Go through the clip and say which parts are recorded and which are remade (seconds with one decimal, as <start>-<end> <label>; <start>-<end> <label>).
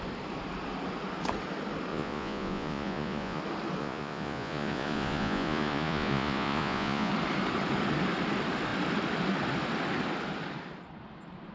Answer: 0.0-1.9 recorded; 1.9-3.4 remade; 3.4-3.8 recorded; 3.8-7.1 remade; 7.1-11.5 recorded